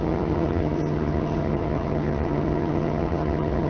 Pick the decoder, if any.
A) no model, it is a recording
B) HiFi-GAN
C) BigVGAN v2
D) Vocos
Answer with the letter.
B